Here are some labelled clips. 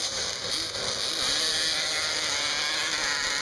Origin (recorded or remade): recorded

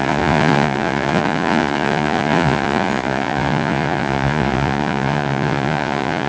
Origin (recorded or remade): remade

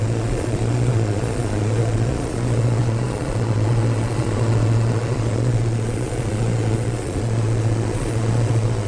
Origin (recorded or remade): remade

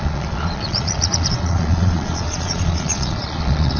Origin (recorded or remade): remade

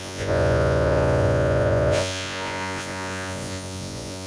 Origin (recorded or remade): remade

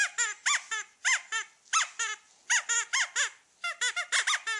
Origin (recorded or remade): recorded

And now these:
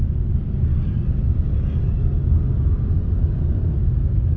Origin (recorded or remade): recorded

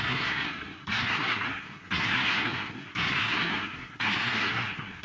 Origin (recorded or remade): remade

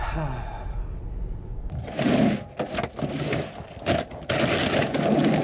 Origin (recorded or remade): recorded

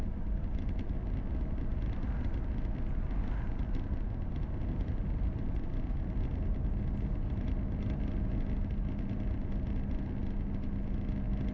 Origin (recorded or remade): recorded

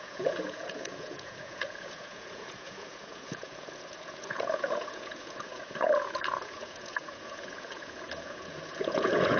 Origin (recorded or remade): remade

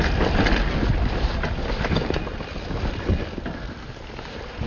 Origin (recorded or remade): recorded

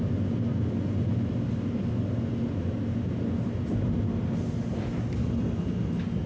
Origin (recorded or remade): recorded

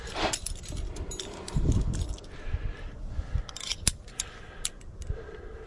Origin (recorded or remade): recorded